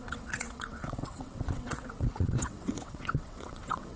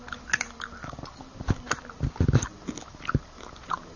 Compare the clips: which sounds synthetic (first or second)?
first